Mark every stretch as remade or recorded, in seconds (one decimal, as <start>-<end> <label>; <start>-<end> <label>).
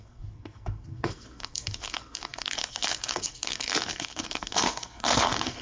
0.0-5.6 remade